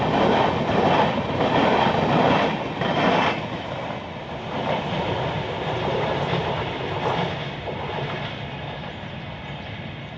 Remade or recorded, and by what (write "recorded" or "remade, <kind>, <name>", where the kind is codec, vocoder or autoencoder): recorded